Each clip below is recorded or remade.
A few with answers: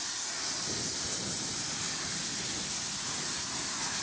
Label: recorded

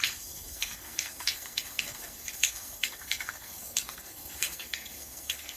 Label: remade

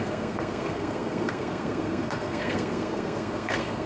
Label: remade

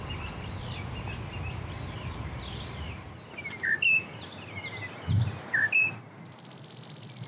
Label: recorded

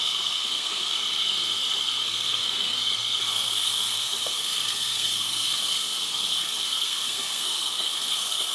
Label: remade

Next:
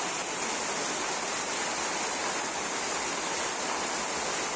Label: recorded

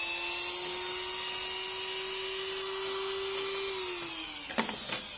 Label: recorded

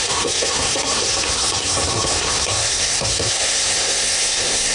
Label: remade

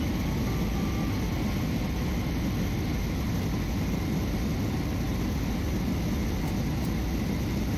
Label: recorded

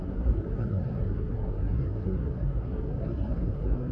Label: remade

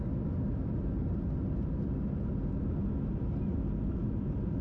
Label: recorded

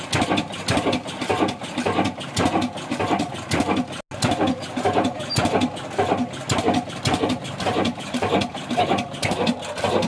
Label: recorded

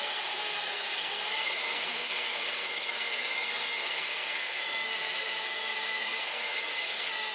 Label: remade